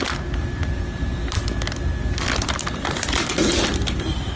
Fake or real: real